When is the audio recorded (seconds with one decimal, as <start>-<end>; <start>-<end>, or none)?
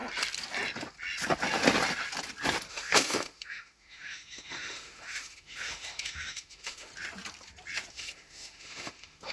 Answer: 0.0-2.7; 6.9-7.9